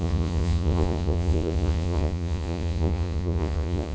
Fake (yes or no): yes